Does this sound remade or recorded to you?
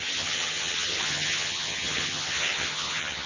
remade